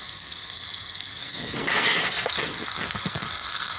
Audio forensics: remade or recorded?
remade